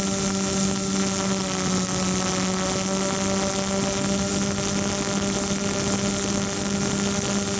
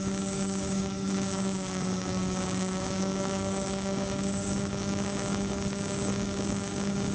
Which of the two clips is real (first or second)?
first